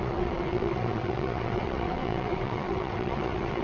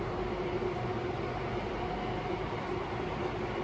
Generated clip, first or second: first